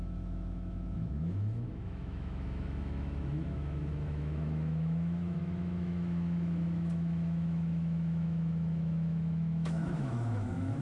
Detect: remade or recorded remade